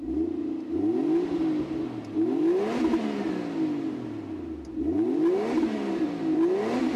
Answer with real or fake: real